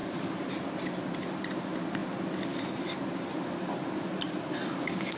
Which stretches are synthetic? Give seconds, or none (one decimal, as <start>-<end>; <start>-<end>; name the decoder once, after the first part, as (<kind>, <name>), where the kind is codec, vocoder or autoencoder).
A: none